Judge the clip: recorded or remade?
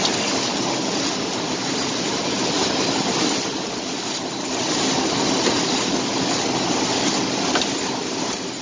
recorded